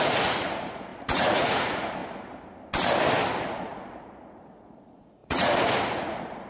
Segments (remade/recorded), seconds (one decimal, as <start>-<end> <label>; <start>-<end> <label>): 0.0-2.0 remade; 2.0-3.5 recorded; 3.5-6.5 remade